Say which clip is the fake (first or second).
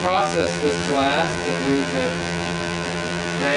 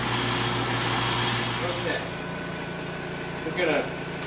first